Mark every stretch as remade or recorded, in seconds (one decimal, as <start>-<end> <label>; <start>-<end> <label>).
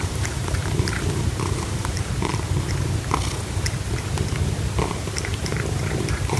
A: 0.0-2.3 remade; 2.3-4.9 recorded; 4.9-5.5 remade; 5.5-6.0 recorded; 6.0-6.4 remade